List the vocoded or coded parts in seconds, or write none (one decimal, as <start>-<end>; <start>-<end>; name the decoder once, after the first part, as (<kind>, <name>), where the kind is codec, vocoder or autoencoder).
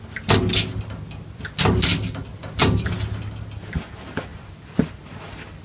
2.3-2.9 (vocoder, BigVGAN v2); 4.3-4.9